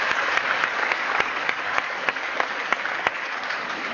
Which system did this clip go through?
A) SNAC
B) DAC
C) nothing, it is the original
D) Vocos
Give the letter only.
B